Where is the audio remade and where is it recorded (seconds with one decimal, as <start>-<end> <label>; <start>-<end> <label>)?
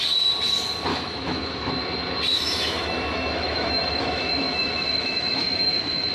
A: 0.0-0.9 recorded; 0.9-1.7 remade; 1.7-2.3 recorded; 2.3-6.1 remade